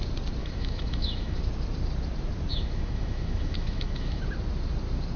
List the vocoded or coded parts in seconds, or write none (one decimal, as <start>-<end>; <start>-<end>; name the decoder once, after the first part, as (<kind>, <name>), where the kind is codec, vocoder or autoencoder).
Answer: 0.4-1.4 (autoencoder, DAC-VAE); 2.5-4.2